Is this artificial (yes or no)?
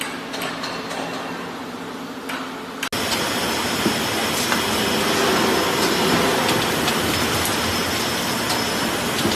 no